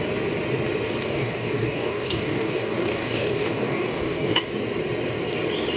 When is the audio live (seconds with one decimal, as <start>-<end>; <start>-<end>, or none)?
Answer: 0.0-1.0; 4.5-5.8